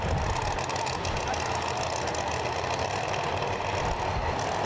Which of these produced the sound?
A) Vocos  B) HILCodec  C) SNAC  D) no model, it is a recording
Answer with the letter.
D